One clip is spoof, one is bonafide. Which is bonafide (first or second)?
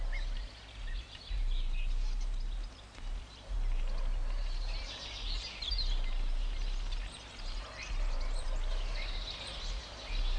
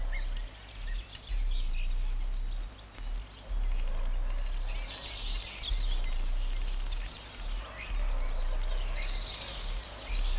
second